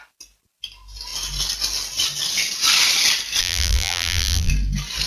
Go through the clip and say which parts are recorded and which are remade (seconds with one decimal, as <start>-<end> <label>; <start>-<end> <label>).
0.0-3.4 recorded; 3.4-4.5 remade; 4.5-5.1 recorded